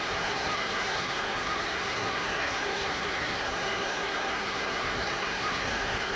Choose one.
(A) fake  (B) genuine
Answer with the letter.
A